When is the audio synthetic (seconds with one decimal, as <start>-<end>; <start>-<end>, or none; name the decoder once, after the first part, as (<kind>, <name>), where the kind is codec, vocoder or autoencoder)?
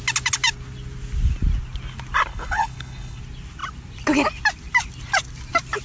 2.3-3.2 (codec, HILCodec)